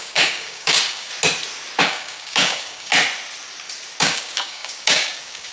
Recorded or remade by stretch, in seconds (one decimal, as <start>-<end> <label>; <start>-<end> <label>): 0.0-1.1 remade; 1.1-1.8 recorded; 1.8-2.9 remade; 2.9-4.0 recorded; 4.0-5.5 remade

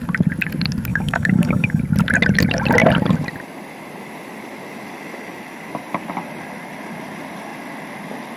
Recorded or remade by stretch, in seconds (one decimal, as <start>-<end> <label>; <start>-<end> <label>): 0.0-0.9 recorded; 0.9-1.8 remade; 1.8-8.4 recorded

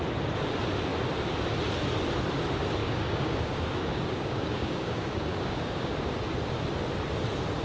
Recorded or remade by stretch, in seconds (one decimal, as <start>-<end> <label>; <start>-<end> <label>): 0.0-2.8 recorded; 2.8-5.9 remade; 5.9-7.6 recorded

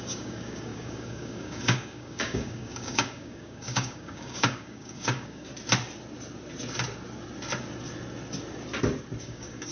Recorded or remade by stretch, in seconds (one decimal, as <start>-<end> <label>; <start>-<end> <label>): 0.0-5.5 remade; 5.5-9.2 recorded; 9.2-9.7 remade

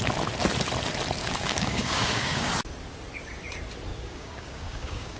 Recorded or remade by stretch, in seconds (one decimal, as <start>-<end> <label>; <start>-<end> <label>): 0.0-1.2 recorded; 1.2-2.5 remade; 2.5-3.9 recorded; 3.9-5.2 remade

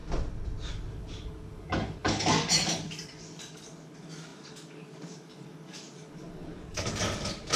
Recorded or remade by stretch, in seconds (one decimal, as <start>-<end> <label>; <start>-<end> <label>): 0.0-0.7 recorded; 0.7-7.6 remade

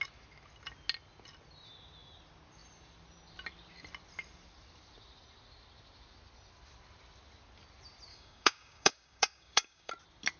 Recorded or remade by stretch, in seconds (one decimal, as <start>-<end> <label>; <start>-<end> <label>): 0.0-8.1 recorded; 8.1-9.9 remade; 9.9-10.4 recorded